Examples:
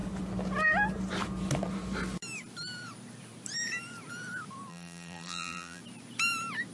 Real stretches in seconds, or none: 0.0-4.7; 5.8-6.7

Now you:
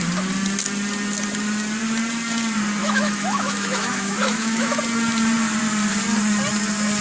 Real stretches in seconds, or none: 0.0-2.8; 4.8-7.0